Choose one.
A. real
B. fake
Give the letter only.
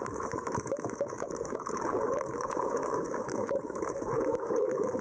B